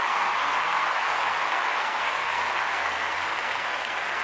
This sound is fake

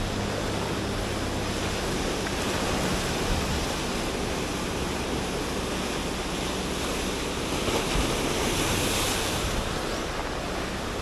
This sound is real